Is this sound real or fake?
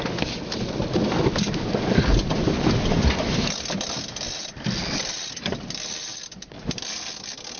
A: real